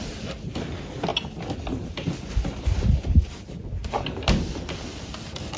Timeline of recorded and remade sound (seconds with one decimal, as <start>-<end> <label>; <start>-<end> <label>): 0.0-1.1 remade; 1.1-4.5 recorded; 4.5-5.6 remade